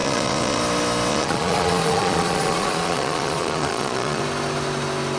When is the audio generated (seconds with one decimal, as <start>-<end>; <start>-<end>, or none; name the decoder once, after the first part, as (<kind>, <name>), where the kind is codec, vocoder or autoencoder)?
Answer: 0.0-0.6 (vocoder, Vocos); 1.1-4.2